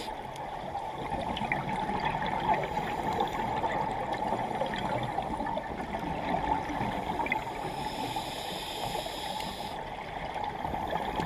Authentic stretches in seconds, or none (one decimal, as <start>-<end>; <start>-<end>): 0.0-11.3